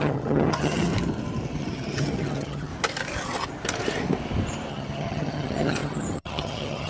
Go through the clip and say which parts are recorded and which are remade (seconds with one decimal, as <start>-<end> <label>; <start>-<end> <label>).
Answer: 0.0-0.9 remade; 0.9-1.6 recorded; 1.6-2.7 remade; 2.7-4.7 recorded; 4.7-6.9 remade

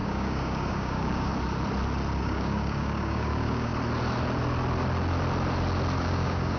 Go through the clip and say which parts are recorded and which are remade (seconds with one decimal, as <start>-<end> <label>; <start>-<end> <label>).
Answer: 0.0-1.3 remade; 1.3-2.2 recorded; 2.2-3.7 remade; 3.7-6.0 recorded; 6.0-6.6 remade

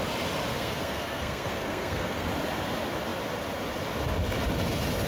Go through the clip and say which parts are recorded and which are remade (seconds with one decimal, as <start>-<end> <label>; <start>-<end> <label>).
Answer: 0.0-0.5 recorded; 0.5-2.3 remade; 2.3-5.1 recorded

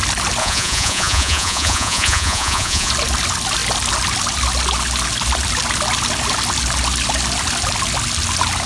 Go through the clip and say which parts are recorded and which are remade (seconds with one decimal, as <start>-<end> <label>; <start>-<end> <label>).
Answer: 0.0-0.4 recorded; 0.4-2.9 remade; 2.9-8.7 recorded

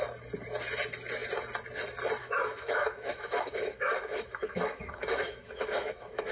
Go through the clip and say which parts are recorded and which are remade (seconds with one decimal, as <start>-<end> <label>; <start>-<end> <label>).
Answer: 0.0-2.2 recorded; 2.2-6.3 remade

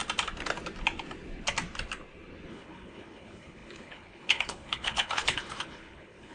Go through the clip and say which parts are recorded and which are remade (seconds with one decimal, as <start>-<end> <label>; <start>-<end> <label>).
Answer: 0.0-2.5 recorded; 2.5-6.3 remade

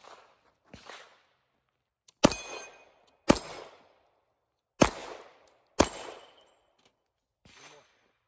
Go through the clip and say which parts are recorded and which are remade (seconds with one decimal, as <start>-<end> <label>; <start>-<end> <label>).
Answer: 0.0-8.3 recorded

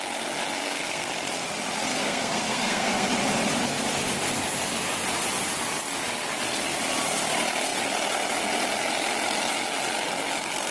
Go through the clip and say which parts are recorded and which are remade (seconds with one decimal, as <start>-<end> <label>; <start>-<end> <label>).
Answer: 0.0-0.6 recorded; 0.6-1.1 remade; 1.1-1.9 recorded; 1.9-3.1 remade; 3.1-10.7 recorded